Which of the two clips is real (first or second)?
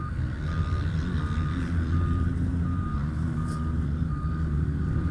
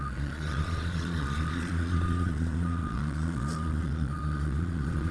first